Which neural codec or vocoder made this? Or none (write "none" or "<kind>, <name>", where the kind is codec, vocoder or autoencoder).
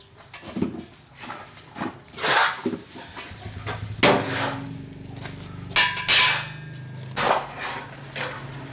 none